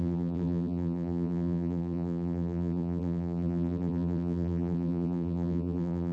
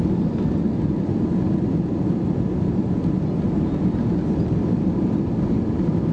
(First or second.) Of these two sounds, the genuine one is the second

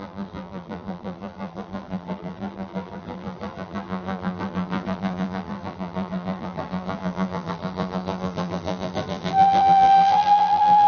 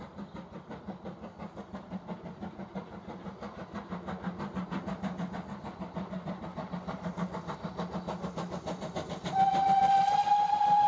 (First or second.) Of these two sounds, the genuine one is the second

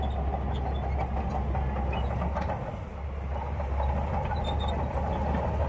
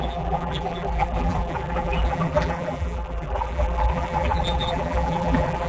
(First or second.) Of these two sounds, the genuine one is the first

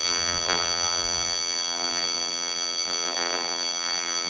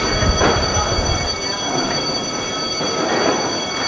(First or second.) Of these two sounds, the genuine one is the second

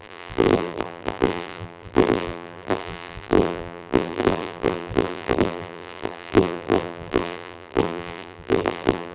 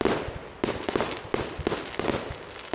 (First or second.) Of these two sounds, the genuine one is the second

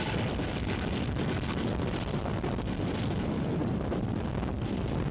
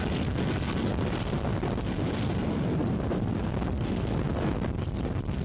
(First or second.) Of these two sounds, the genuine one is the second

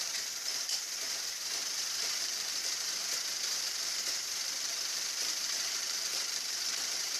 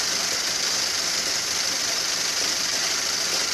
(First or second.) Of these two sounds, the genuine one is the second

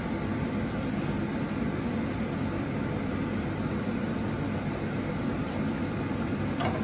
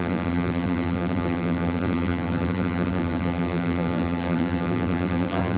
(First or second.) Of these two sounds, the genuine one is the first